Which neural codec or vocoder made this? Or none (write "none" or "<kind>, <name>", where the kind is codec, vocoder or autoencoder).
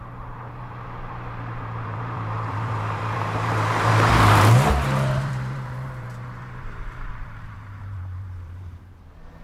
vocoder, BigVGAN v2